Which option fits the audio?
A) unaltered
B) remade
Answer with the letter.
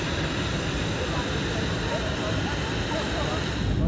A